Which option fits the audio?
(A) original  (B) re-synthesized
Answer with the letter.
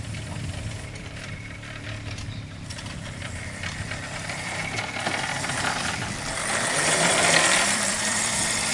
B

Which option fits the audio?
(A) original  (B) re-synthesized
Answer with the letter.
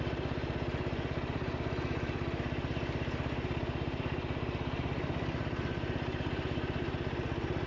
B